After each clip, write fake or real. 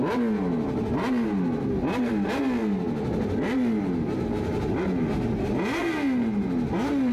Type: real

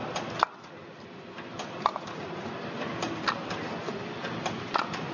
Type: real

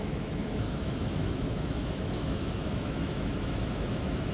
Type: fake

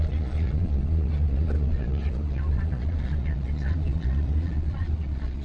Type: fake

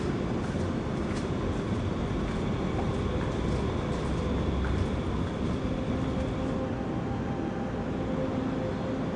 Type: real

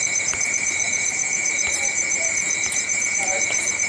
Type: fake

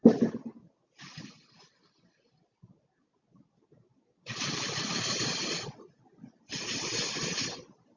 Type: real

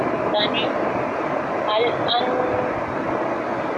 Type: real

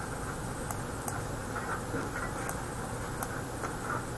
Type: real